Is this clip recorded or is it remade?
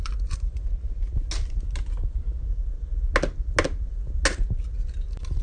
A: recorded